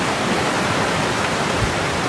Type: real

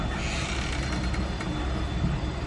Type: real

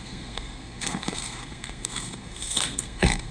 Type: fake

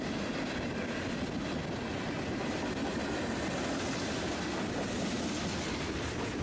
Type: real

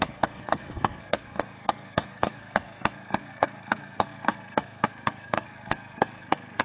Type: fake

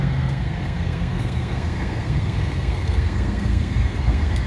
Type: fake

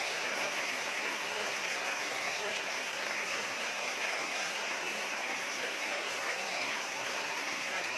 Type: fake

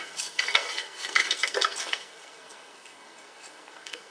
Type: fake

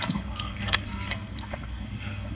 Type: fake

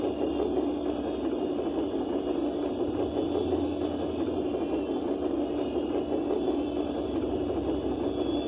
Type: real